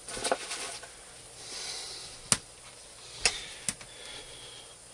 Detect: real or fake real